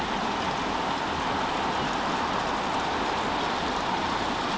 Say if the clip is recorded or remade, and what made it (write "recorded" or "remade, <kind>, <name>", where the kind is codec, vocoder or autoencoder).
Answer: recorded